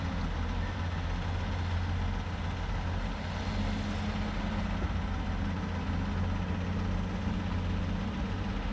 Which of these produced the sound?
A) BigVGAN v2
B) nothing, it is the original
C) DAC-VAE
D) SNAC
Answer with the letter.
B